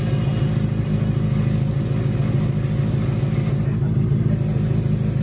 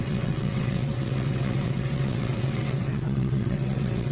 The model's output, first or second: second